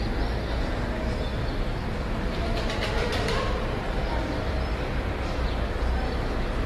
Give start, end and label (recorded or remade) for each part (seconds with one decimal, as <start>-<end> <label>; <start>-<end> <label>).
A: 0.0-1.3 recorded; 1.3-4.8 remade; 4.8-6.7 recorded